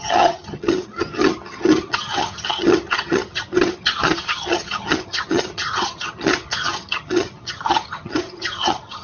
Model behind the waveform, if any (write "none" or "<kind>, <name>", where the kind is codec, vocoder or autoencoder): vocoder, HiFi-GAN